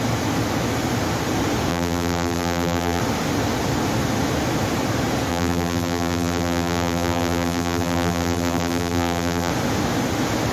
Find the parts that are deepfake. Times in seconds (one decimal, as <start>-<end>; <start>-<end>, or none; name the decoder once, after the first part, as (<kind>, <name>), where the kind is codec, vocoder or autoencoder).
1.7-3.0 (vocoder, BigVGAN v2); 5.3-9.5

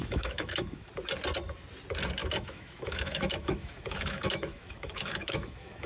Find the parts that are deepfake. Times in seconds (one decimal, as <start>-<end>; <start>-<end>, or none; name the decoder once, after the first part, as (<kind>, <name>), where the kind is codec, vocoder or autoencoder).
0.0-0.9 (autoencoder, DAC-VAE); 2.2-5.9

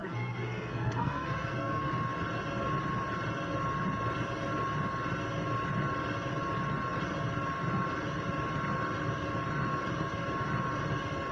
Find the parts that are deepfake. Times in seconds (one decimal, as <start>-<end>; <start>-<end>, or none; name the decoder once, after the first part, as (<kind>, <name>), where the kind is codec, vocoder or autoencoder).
0.0-1.9 (codec, SNAC)

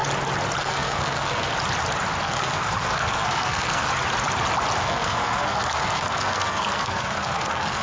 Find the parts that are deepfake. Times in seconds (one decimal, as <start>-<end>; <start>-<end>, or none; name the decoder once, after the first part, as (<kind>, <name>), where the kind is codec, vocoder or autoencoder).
0.6-1.5 (codec, SNAC); 2.2-3.9; 4.8-7.8

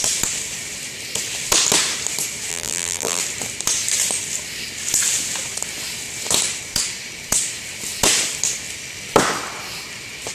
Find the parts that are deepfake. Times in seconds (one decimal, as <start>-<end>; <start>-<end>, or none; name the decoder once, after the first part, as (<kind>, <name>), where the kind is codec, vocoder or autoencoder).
2.5-3.2 (vocoder, BigVGAN v2)